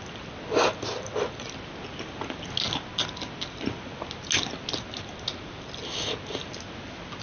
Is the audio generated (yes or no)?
no